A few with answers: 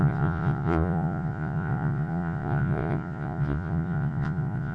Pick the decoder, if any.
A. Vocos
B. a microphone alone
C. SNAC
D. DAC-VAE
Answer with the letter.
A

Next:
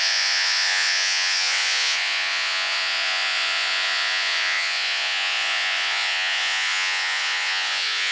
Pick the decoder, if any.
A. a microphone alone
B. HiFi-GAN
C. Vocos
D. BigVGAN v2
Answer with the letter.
C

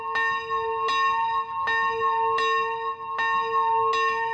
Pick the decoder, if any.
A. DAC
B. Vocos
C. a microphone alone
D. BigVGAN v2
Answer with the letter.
C